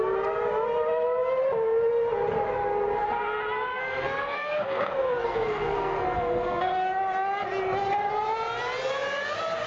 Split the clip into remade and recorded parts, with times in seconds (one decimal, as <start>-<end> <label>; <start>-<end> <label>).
0.0-3.7 recorded; 3.7-6.7 remade; 6.7-9.7 recorded

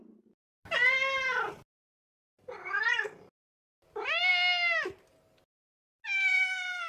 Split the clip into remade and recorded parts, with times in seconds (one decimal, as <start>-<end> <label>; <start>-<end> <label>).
0.0-6.9 recorded

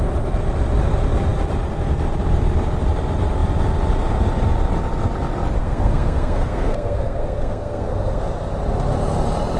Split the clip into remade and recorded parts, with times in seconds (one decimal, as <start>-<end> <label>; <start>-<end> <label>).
0.0-5.6 recorded; 5.6-8.2 remade; 8.2-9.6 recorded

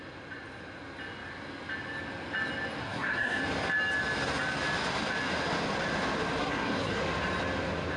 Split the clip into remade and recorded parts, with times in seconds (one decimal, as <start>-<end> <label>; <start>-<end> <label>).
0.0-2.8 recorded; 2.8-3.4 remade; 3.4-6.4 recorded; 6.4-7.0 remade; 7.0-8.0 recorded

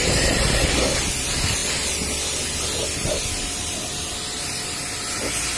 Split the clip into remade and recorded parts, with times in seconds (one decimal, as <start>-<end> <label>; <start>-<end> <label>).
0.0-5.6 recorded

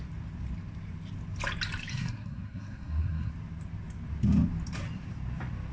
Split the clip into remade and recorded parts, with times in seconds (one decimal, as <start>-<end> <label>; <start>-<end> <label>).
0.0-1.9 recorded; 1.9-3.3 remade; 3.3-5.7 recorded

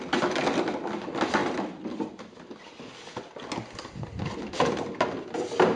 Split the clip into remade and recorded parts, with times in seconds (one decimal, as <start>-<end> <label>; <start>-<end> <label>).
0.0-5.8 recorded